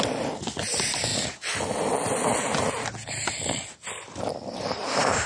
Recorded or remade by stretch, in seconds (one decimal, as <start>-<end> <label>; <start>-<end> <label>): 0.0-5.3 recorded